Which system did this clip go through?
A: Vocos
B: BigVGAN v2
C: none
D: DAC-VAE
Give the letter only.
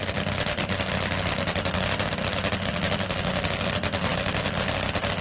C